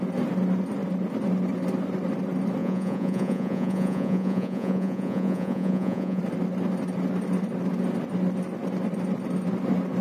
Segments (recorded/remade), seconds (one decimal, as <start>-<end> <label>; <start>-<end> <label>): 0.0-2.6 recorded; 2.6-6.2 remade; 6.2-10.0 recorded